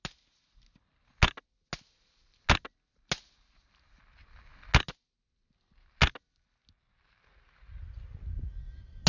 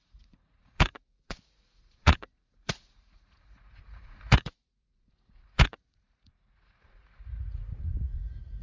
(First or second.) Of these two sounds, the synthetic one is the second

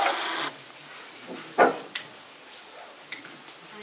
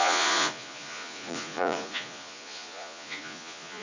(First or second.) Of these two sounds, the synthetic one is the second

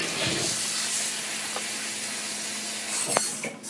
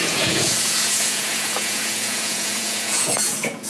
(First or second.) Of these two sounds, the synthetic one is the second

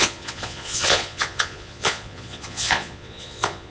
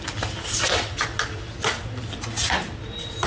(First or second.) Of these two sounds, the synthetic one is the first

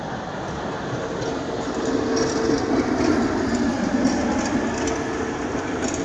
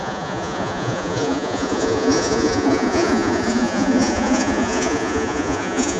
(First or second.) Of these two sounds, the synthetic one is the second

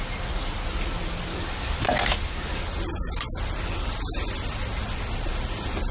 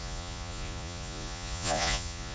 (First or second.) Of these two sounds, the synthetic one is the second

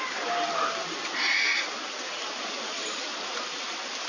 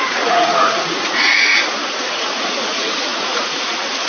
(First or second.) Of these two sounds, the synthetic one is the second